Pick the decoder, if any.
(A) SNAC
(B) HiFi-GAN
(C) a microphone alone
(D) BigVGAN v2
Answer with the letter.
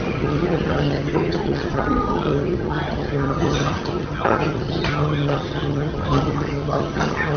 B